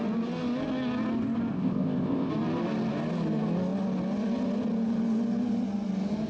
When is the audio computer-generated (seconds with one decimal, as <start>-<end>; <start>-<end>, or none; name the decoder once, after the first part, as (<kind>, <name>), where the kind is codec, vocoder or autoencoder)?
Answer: 1.5-2.3 (codec, ZipCodec)